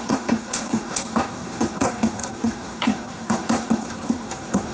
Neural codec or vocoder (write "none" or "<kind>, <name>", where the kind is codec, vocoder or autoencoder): codec, SNAC